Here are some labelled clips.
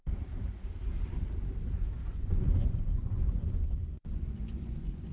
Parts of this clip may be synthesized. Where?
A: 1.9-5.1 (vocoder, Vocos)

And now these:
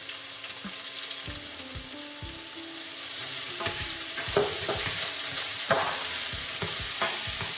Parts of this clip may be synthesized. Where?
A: 3.2-6.7 (vocoder, BigVGAN v2)

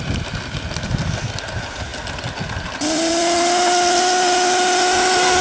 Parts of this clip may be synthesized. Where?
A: none

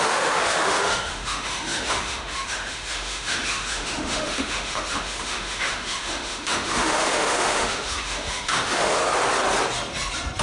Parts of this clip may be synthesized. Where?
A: 0.0-9.0 (autoencoder, DAC-VAE)

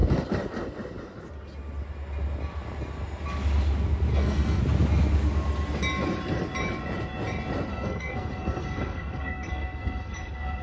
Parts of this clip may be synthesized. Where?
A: 4.1-4.6 (codec, SNAC); 7.7-10.6

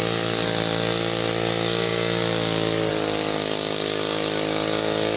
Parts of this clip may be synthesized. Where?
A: none

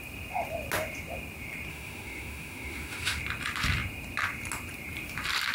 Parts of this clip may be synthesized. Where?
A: 1.7-3.2 (autoencoder, DAC-VAE)

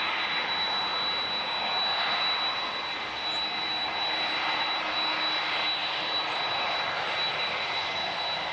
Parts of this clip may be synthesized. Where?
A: none